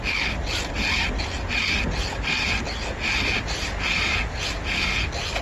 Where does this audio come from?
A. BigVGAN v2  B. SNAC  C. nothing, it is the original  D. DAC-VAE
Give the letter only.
C